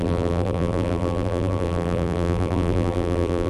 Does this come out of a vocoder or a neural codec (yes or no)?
yes